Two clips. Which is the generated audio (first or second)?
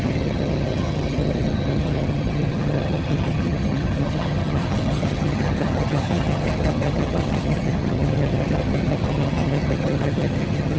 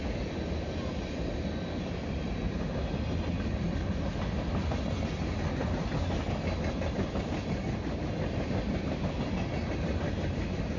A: first